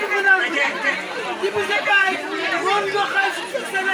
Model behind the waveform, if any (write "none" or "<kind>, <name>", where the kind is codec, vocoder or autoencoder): vocoder, BigVGAN v2